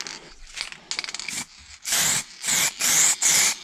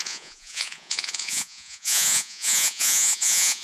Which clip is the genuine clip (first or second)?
first